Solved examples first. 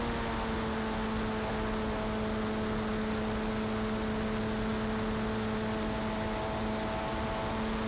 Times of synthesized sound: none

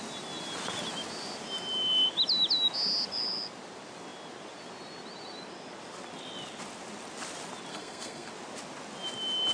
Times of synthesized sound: 7.7-8.3 (codec, SNAC)